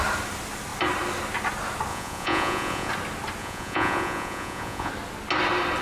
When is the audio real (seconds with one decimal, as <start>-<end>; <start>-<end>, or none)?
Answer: 0.0-1.9; 2.9-3.4; 4.9-5.8